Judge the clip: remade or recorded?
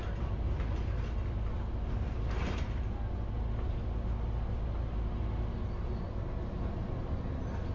recorded